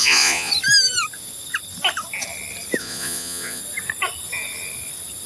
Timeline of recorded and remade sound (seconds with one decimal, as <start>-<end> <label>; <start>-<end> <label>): 0.0-0.5 remade; 0.5-2.8 recorded; 2.8-3.6 remade; 3.6-5.3 recorded